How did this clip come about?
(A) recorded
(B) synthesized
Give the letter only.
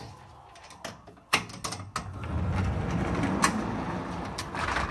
A